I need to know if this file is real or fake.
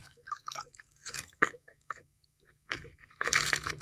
fake